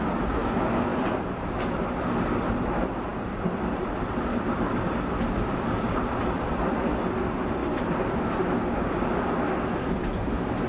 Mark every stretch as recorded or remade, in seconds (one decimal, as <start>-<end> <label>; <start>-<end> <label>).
0.0-0.9 recorded; 0.9-1.6 remade; 1.6-3.1 recorded; 3.1-6.9 remade; 6.9-10.7 recorded